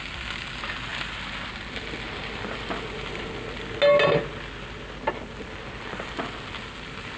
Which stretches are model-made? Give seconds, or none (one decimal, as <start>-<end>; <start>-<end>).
none